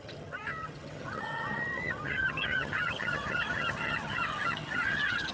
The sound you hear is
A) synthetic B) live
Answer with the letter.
A